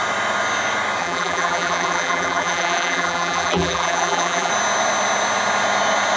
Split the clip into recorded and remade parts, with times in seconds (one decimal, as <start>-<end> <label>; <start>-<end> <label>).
0.0-1.0 recorded; 1.0-4.5 remade; 4.5-6.2 recorded